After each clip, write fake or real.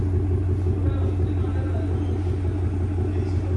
real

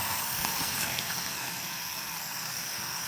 fake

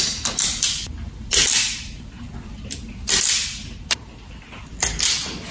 real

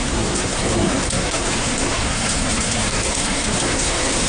fake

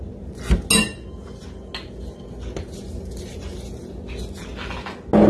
real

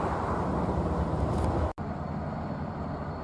real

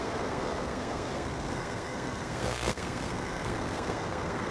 fake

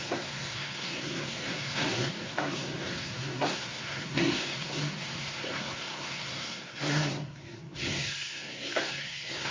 fake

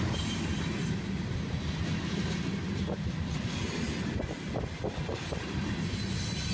real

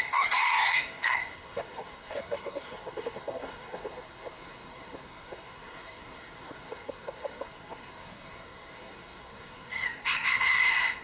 fake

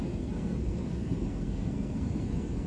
fake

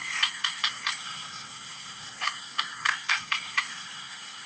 fake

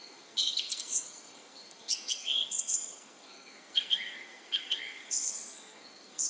fake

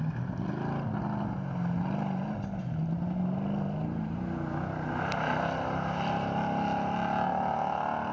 real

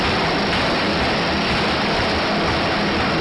real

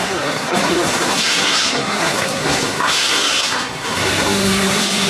fake